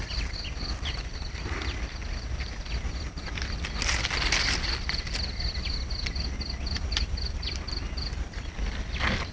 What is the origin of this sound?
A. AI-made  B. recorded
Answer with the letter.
B